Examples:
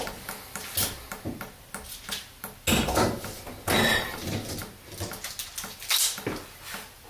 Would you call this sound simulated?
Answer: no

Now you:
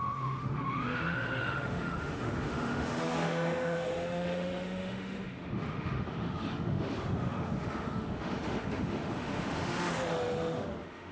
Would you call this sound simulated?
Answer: yes